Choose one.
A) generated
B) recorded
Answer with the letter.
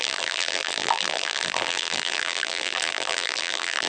A